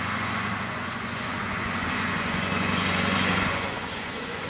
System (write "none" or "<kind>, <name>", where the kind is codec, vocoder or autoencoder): vocoder, Vocos